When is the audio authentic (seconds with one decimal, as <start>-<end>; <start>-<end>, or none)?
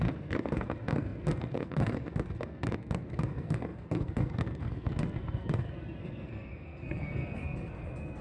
none